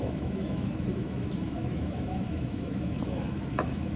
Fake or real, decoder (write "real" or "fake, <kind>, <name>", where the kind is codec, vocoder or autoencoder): fake, autoencoder, DAC-VAE